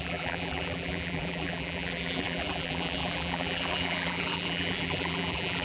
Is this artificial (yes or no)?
yes